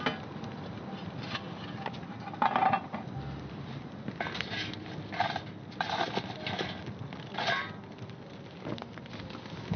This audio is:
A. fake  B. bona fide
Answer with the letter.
B